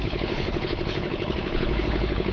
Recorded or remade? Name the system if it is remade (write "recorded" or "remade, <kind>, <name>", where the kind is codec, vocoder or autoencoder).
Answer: remade, codec, HILCodec